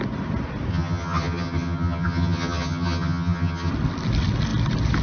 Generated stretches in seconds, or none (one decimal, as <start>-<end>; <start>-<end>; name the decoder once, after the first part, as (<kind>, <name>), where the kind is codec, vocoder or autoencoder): 0.7-3.7 (vocoder, HiFi-GAN)

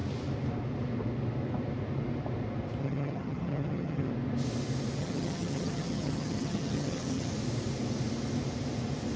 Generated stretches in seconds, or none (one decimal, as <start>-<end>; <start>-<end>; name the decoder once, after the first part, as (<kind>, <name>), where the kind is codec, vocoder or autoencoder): 2.8-4.1 (vocoder, HiFi-GAN); 5.0-7.3

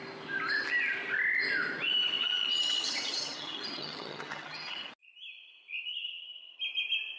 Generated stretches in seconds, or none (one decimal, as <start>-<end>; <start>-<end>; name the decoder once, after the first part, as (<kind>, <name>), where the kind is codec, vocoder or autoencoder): 2.2-4.9 (vocoder, HiFi-GAN); 5.9-6.6

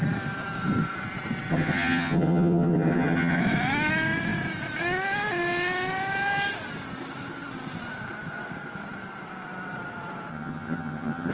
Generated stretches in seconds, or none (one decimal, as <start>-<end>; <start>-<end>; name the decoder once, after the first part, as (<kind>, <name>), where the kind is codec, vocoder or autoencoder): 1.5-3.4 (vocoder, HiFi-GAN); 10.3-11.3

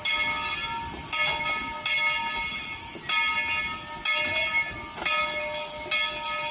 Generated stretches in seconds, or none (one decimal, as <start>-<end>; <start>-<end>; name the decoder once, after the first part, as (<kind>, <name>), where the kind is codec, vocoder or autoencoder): none